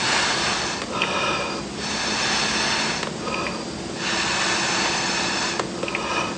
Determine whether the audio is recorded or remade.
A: recorded